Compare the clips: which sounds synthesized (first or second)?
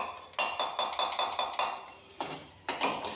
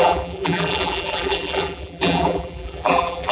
second